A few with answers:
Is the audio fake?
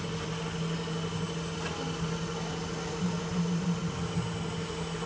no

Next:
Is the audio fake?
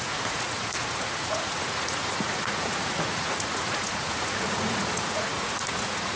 yes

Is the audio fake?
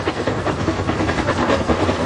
yes